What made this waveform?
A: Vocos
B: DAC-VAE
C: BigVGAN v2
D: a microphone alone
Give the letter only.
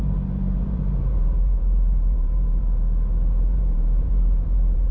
C